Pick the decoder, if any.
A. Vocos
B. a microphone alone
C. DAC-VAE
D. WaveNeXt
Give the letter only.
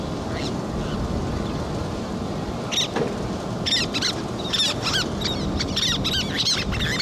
B